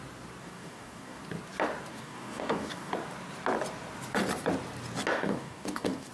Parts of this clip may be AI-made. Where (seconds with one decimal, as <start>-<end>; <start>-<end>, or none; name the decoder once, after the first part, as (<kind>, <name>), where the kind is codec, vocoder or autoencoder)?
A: 0.4-1.2 (codec, DAC); 1.9-2.9; 5.1-6.1